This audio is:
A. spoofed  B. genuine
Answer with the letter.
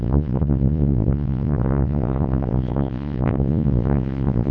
A